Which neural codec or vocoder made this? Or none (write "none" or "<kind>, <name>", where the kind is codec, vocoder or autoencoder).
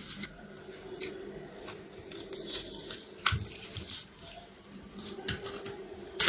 none